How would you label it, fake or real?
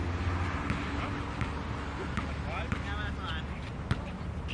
real